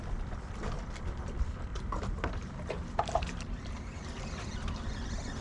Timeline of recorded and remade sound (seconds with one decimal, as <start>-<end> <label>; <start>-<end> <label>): 0.0-1.7 recorded; 1.7-4.2 remade; 4.2-5.4 recorded